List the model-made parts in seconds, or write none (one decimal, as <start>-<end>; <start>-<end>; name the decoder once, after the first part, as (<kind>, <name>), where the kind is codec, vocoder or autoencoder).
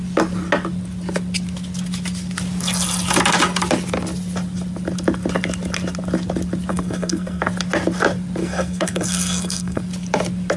6.7-7.4 (codec, SNAC); 8.4-9.8